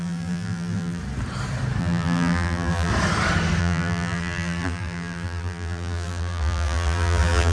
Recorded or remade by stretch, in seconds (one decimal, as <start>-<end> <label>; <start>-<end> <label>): 0.0-1.0 remade; 1.0-1.8 recorded; 1.8-2.9 remade; 2.9-3.6 recorded; 3.6-7.5 remade